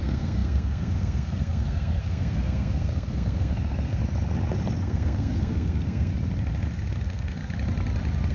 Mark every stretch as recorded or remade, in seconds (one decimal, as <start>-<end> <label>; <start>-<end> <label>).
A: 0.0-4.0 remade; 4.0-4.8 recorded; 4.8-6.1 remade; 6.1-6.9 recorded; 6.9-7.4 remade; 7.4-8.3 recorded